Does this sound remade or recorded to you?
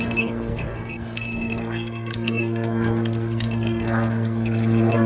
remade